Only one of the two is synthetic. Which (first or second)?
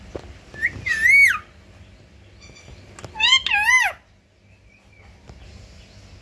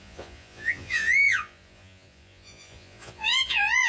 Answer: second